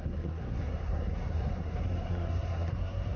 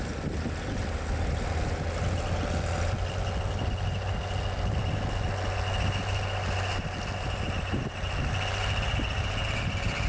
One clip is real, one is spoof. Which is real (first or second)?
second